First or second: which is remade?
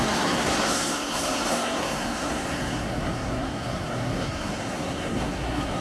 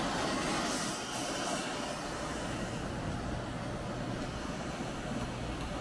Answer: first